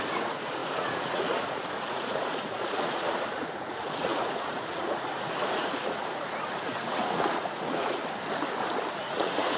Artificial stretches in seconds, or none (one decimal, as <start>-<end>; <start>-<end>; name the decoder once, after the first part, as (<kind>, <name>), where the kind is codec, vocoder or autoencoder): 0.0-8.0 (vocoder, Vocos); 8.9-9.6